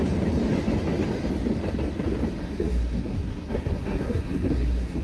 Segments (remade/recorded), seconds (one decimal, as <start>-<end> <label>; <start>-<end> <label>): 0.0-2.4 recorded; 2.4-5.0 remade